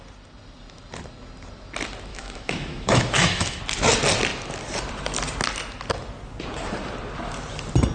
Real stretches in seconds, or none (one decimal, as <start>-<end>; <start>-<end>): 0.0-2.1; 3.6-7.9